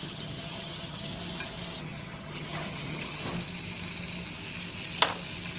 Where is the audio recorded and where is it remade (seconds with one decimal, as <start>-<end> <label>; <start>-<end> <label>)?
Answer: 0.0-1.1 remade; 1.1-1.8 recorded; 1.8-3.2 remade; 3.2-5.6 recorded